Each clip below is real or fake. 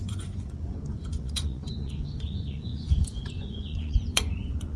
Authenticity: fake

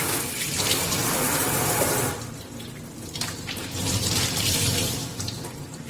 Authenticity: fake